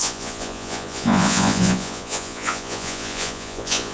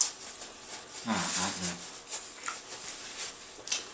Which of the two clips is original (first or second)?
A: second